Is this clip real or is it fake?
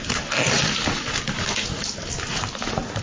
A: real